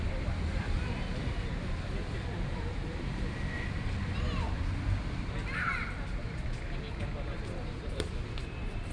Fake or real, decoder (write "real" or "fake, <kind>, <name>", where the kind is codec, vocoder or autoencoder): fake, vocoder, BigVGAN v2